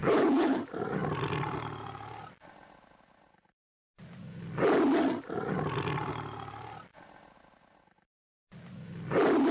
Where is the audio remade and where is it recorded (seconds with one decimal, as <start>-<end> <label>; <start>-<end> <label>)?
0.0-0.6 remade; 0.6-9.5 recorded